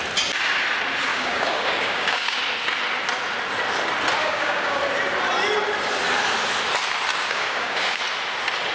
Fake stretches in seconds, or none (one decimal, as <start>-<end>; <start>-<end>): 1.1-2.4; 4.2-4.8; 7.1-8.0

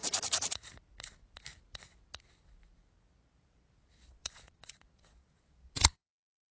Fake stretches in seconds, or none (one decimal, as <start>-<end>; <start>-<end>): 3.9-6.5